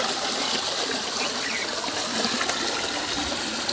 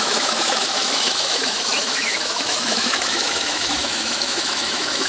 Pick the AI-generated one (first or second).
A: second